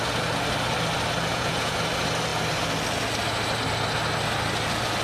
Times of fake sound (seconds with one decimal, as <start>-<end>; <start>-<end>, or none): 1.3-1.8